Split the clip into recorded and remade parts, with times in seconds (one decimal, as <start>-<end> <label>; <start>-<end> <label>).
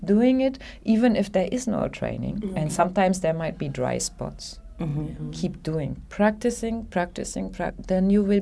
0.0-8.4 recorded